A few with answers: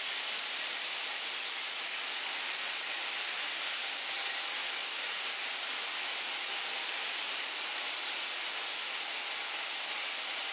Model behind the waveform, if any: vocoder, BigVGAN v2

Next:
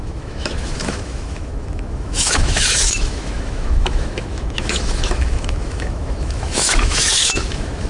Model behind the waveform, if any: autoencoder, DAC-VAE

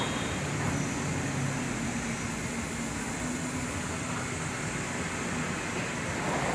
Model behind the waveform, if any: none